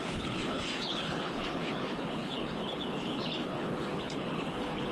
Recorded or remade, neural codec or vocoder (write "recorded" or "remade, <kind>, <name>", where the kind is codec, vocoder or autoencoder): remade, codec, HILCodec